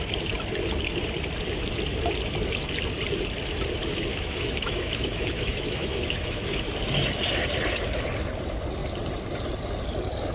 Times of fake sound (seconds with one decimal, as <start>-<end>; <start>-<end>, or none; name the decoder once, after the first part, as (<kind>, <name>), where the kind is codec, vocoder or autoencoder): 4.1-6.6 (autoencoder, DAC-VAE)